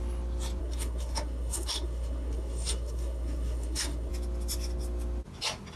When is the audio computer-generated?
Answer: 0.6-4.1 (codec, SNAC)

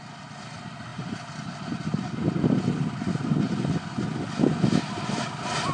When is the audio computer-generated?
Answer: none